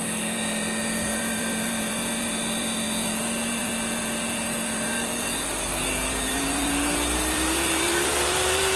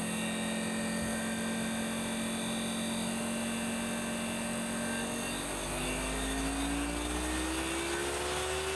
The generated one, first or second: first